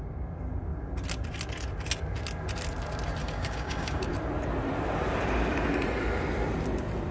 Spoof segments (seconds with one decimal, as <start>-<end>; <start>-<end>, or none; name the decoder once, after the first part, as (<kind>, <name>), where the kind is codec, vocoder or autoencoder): 3.2-4.1 (codec, DAC)